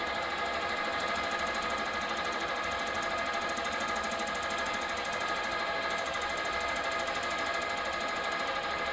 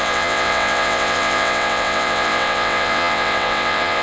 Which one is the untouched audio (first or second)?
first